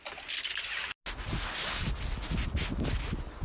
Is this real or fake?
real